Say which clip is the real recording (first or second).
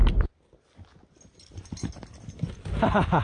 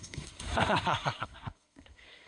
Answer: first